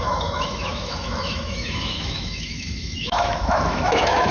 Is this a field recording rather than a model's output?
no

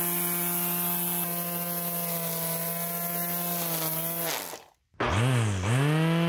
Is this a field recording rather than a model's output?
yes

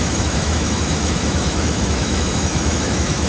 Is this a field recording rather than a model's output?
no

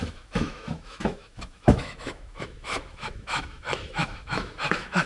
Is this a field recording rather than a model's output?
no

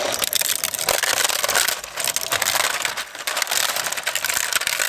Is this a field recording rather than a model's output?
yes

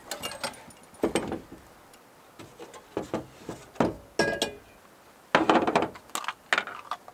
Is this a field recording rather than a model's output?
yes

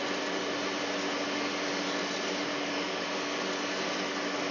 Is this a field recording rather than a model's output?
yes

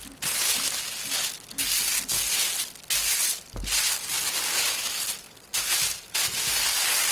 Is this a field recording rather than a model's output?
yes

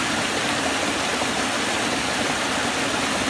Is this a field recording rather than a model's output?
yes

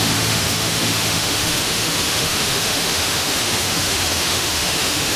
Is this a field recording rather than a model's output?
no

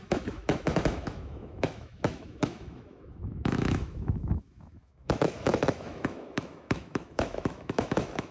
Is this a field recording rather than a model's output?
no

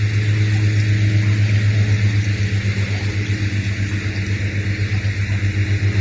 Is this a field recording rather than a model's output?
yes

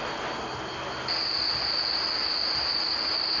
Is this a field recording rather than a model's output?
yes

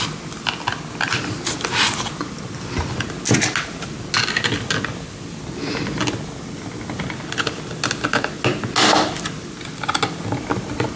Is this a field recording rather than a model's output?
yes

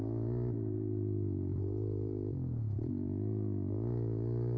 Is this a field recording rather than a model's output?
yes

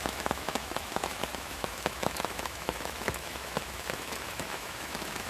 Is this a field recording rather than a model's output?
no